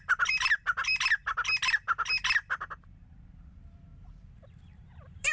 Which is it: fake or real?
fake